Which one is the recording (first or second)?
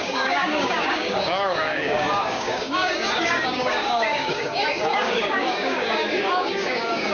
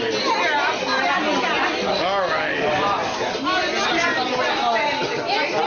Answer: second